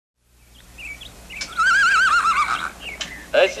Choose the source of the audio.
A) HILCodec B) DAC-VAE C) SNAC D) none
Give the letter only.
D